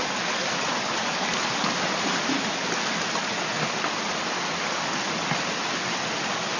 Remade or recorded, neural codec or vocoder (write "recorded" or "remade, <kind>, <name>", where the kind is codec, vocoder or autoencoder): recorded